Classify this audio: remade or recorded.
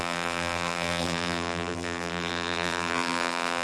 remade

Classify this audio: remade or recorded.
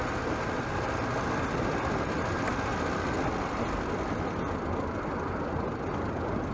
recorded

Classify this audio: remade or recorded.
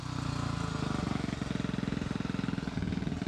recorded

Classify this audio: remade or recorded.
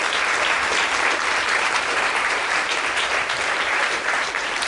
remade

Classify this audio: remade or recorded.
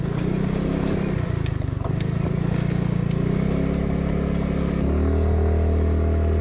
recorded